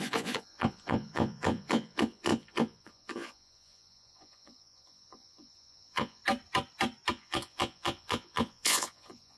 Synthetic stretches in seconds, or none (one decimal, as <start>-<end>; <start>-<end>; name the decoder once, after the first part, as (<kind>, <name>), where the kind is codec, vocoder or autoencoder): 0.0-6.2 (vocoder, Vocos); 7.1-9.4